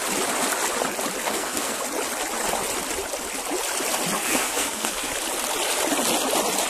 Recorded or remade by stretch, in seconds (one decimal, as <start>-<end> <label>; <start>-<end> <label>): 0.0-1.2 recorded; 1.2-1.8 remade; 1.8-4.2 recorded; 4.2-5.1 remade; 5.1-6.7 recorded